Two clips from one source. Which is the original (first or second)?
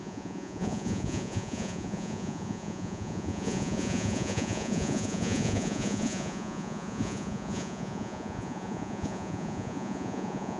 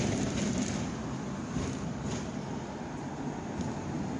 second